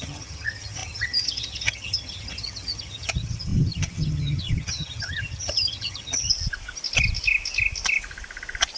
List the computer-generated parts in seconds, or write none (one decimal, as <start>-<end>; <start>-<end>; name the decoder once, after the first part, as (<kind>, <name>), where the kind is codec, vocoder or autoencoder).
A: 0.0-6.3 (vocoder, HiFi-GAN)